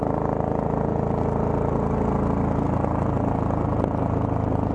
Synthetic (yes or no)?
no